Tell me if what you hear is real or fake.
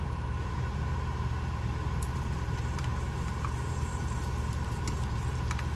fake